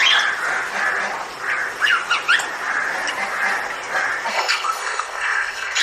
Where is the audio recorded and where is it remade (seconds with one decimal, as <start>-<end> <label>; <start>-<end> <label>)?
0.0-4.3 recorded; 4.3-5.8 remade